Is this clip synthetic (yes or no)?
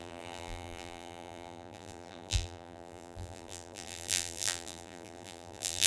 yes